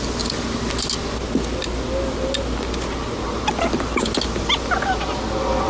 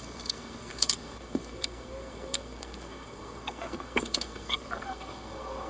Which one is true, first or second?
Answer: first